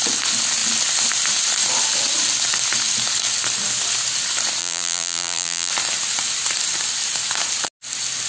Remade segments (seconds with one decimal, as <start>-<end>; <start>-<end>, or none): 4.6-5.7